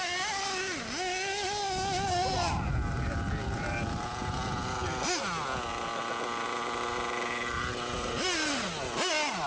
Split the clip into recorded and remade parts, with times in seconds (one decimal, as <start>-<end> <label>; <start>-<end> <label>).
0.0-9.5 recorded

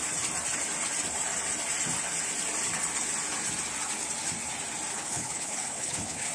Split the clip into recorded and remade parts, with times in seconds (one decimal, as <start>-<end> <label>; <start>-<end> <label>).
0.0-4.9 recorded; 4.9-6.3 remade

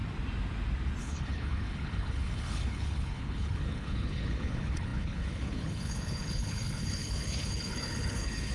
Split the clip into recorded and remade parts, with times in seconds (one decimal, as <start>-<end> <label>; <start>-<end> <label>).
0.0-1.0 recorded; 1.0-8.5 remade

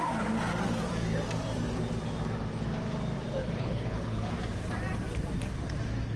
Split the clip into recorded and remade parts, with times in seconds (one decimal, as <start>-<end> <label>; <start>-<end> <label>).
0.0-3.4 recorded; 3.4-4.3 remade; 4.3-6.2 recorded